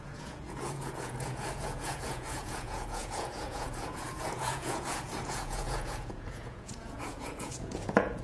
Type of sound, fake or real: fake